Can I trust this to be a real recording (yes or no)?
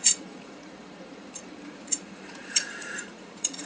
no